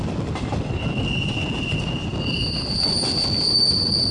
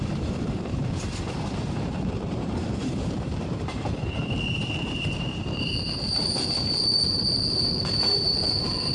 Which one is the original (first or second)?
first